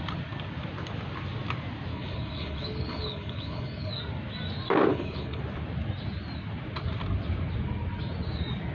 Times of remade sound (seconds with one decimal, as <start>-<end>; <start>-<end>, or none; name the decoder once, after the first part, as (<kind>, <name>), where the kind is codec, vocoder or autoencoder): 1.9-3.9 (codec, HILCodec); 4.9-5.4